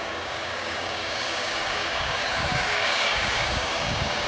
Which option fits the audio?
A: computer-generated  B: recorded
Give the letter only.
A